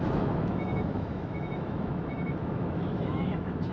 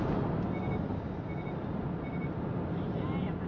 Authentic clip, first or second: second